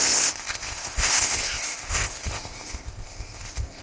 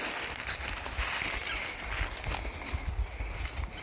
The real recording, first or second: second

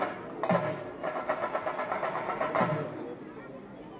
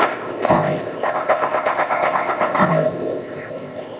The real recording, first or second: first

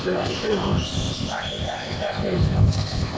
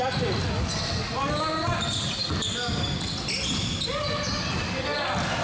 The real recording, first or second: second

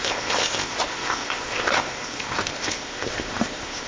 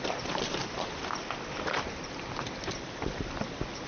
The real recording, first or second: second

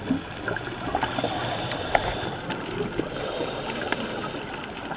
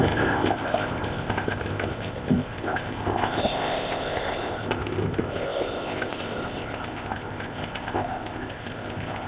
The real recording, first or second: first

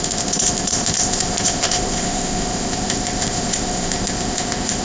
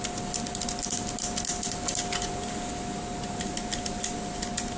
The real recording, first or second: second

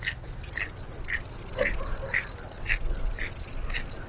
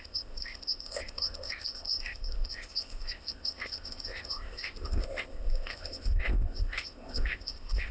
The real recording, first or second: first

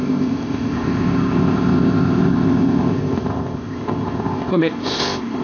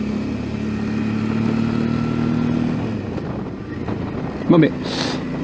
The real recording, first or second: second